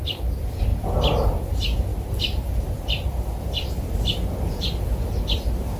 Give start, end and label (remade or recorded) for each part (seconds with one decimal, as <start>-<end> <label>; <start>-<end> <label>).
0.0-1.9 recorded; 1.9-4.4 remade; 4.4-5.8 recorded